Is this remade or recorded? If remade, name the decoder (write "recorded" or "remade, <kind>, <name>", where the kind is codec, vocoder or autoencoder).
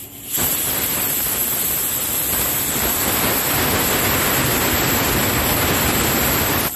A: recorded